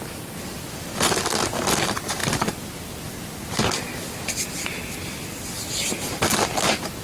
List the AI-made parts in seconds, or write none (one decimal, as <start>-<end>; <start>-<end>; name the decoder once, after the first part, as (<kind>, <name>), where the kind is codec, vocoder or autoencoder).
0.0-7.0 (vocoder, BigVGAN v2)